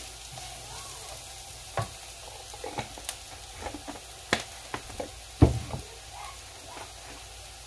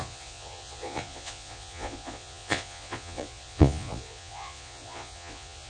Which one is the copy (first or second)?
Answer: second